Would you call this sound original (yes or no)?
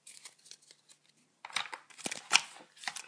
yes